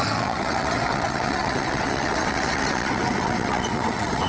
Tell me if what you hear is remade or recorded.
remade